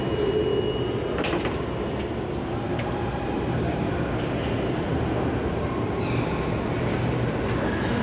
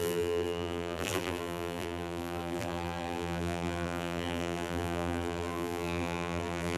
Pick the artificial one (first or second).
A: second